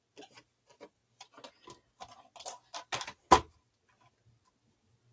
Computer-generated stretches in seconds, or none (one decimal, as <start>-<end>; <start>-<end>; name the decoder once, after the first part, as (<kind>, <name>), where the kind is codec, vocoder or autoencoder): none